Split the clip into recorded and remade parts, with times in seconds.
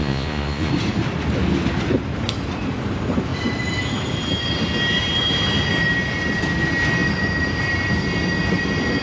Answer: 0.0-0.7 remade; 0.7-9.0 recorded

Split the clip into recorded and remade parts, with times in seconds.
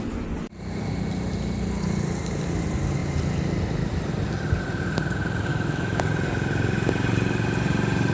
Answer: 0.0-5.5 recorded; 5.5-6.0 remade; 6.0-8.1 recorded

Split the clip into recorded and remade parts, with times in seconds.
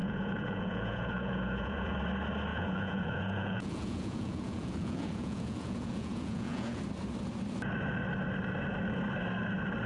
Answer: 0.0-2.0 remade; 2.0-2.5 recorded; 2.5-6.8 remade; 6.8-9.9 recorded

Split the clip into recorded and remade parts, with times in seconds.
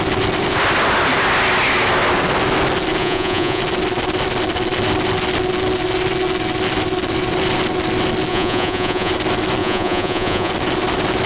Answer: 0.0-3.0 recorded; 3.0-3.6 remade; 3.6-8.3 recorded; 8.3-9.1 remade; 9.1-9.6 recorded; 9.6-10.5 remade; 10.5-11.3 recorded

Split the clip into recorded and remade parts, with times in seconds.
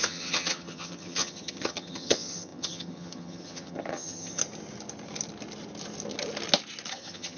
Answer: 0.0-4.4 remade; 4.4-6.9 recorded; 6.9-7.4 remade